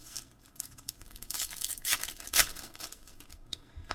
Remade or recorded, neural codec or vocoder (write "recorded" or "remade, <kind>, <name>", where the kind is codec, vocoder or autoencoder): remade, codec, SNAC